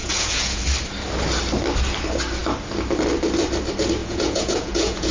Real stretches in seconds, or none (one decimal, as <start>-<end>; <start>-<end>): 0.6-4.0